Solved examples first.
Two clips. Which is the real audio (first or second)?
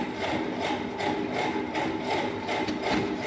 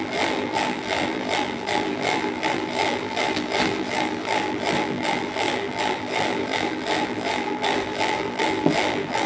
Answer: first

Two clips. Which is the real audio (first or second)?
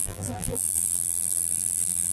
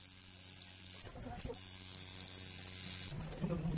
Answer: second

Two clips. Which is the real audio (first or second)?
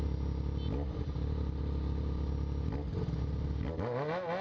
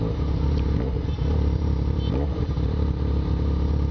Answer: first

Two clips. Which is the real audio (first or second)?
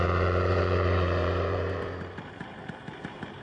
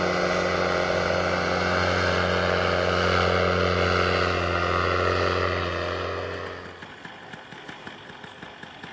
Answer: second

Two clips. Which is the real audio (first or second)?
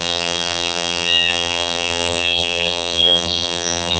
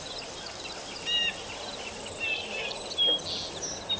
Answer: second